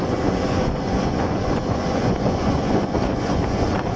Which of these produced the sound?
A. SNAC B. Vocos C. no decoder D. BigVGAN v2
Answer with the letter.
B